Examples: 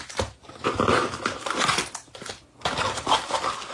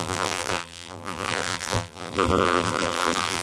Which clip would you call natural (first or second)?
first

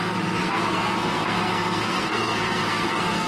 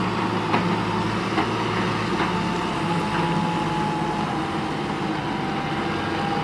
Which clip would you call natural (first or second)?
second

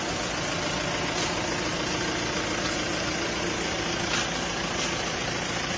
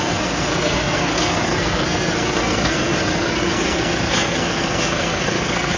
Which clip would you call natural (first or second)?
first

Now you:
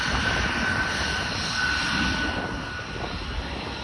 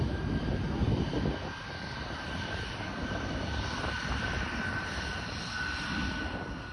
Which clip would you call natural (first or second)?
first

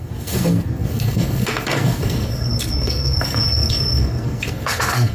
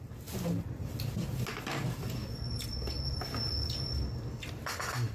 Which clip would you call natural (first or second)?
second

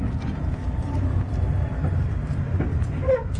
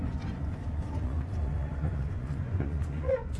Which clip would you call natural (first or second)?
first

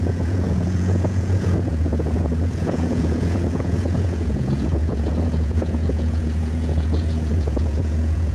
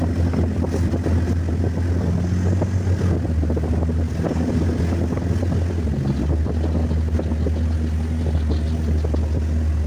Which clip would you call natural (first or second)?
second